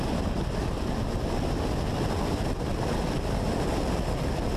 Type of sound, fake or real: real